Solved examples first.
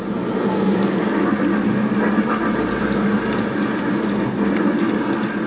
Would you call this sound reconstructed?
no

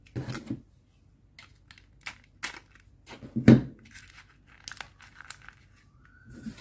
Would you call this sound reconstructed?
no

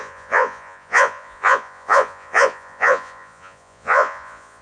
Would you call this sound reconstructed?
yes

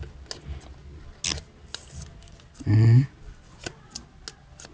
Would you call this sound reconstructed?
no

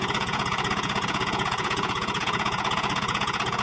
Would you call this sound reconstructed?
yes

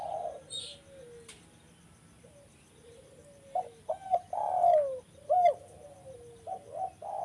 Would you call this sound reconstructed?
no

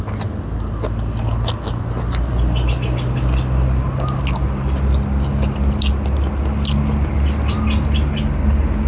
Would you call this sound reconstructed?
no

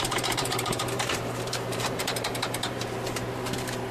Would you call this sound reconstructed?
yes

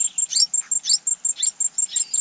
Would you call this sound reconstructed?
no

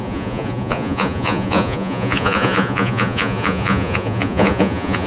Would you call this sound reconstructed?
yes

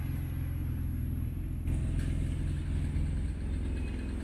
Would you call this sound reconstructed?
no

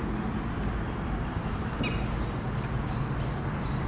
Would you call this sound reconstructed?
no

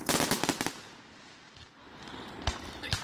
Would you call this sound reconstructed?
no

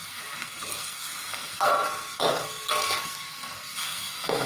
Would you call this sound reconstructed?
yes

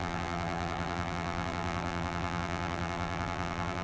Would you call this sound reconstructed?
yes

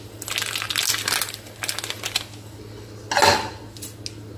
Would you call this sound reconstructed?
no